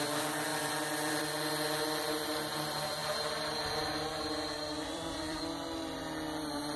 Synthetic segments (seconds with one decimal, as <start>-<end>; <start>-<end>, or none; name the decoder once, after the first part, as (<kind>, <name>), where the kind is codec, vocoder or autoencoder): 0.5-1.2 (vocoder, BigVGAN v2); 4.8-5.4